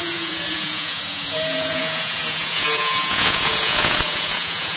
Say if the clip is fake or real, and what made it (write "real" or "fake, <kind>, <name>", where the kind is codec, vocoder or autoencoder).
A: fake, vocoder, Vocos